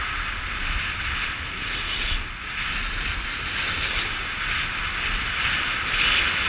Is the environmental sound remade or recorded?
recorded